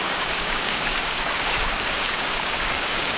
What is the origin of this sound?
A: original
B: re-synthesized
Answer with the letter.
B